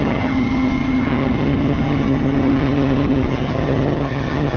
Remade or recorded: remade